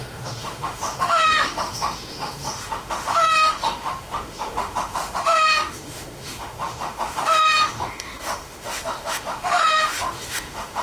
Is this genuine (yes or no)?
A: no